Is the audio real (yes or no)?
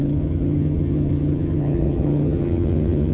no